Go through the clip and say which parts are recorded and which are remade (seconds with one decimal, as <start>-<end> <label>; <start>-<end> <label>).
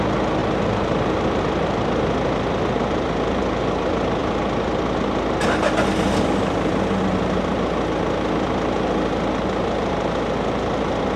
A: 0.0-11.2 recorded